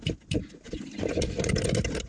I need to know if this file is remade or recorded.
recorded